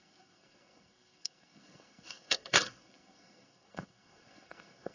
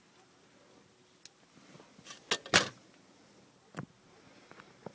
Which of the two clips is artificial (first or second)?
first